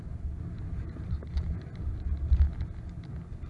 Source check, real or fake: real